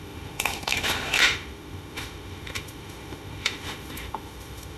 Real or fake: fake